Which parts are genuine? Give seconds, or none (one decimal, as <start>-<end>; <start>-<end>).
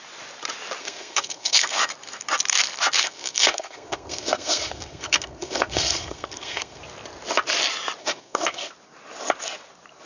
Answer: 0.0-0.8; 1.8-3.0; 6.8-8.0; 8.7-10.1